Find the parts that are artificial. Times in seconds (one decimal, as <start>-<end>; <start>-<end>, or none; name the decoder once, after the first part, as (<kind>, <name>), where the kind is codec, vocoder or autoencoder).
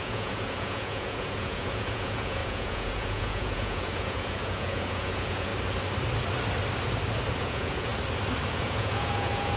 0.0-5.5 (vocoder, Vocos); 7.4-7.9; 8.5-9.6